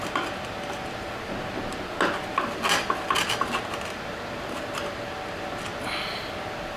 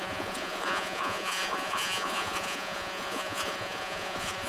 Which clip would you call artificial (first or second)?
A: second